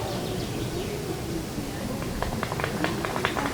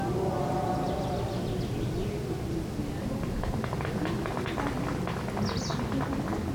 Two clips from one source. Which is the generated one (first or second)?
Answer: first